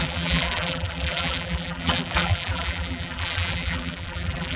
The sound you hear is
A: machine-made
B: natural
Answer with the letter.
A